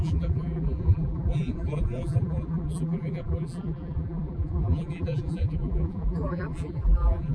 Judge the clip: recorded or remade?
remade